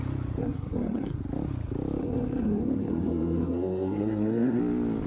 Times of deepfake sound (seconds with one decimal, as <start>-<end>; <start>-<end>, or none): 0.4-1.2; 2.0-4.6